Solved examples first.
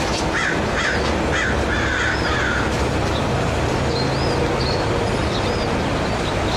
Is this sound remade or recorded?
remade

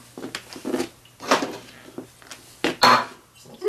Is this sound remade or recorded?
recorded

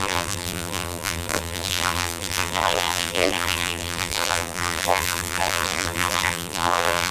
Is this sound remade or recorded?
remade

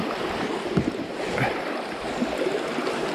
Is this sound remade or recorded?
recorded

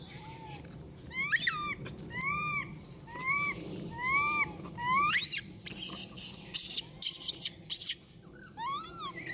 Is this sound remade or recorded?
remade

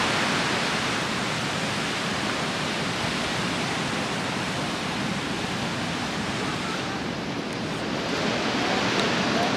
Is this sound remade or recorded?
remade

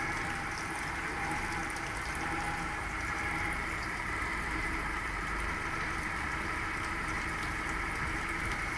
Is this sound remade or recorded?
remade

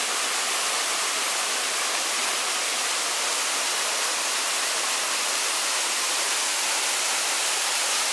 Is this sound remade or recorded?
remade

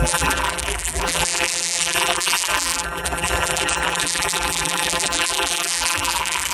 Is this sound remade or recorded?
remade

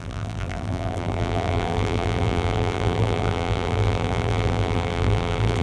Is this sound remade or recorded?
remade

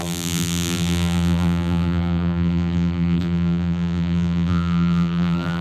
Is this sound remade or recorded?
remade